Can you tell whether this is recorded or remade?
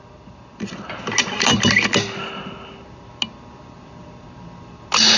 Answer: recorded